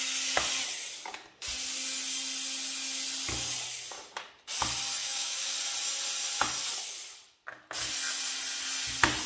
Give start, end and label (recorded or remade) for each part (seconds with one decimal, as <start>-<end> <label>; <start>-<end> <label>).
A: 0.0-5.0 recorded; 5.0-5.5 remade; 5.5-9.3 recorded